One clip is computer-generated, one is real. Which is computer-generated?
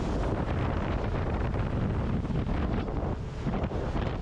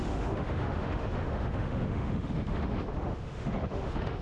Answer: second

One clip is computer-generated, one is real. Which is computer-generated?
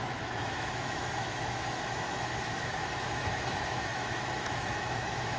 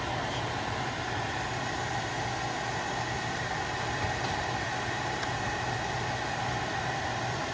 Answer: first